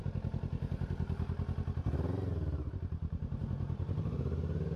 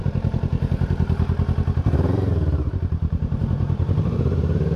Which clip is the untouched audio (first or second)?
first